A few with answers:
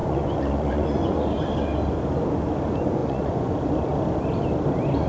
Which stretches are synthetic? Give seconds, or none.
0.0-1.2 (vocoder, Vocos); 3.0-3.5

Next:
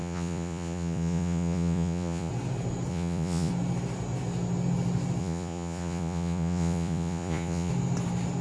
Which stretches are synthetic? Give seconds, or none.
0.0-2.3 (vocoder, Vocos); 2.9-3.5; 5.2-7.7